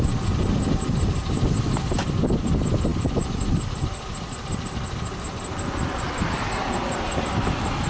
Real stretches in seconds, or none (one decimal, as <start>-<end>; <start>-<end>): 0.0-7.9